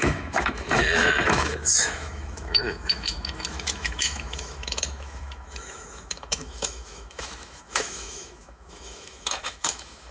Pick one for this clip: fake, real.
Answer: fake